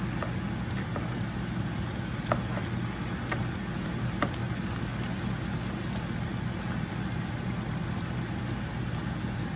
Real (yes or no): yes